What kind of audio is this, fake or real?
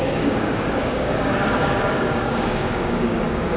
fake